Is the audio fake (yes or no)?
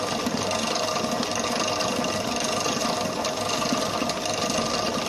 no